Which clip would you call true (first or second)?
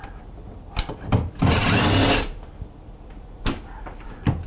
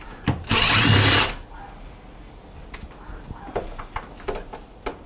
second